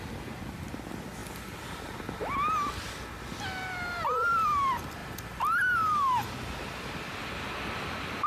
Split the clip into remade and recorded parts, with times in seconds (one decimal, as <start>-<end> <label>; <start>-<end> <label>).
0.0-8.3 recorded